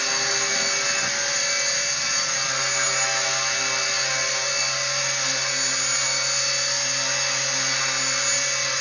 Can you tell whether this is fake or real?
real